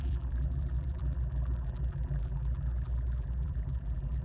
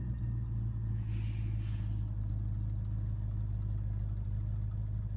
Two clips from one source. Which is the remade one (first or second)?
first